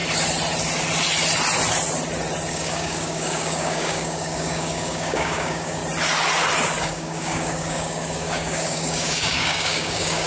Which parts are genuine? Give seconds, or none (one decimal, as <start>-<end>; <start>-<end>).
0.0-2.5; 5.8-6.8